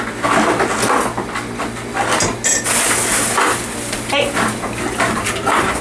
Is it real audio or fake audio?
real